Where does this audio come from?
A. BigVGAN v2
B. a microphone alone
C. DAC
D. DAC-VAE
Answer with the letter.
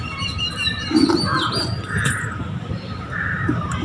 A